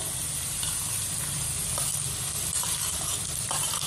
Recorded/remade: recorded